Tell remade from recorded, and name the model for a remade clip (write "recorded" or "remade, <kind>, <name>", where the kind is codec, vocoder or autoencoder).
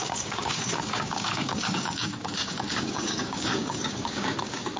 remade, codec, DAC